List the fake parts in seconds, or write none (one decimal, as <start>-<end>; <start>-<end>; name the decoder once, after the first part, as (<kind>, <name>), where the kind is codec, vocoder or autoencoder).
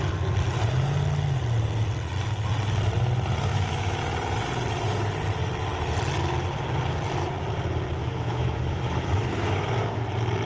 3.5-4.0 (autoencoder, DAC-VAE); 8.0-10.0